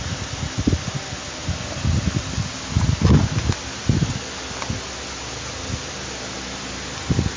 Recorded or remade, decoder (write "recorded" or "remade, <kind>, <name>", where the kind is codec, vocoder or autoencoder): recorded